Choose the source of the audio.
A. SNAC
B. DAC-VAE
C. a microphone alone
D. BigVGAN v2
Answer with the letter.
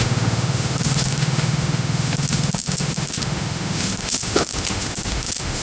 B